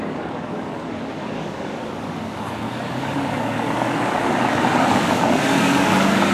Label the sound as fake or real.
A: fake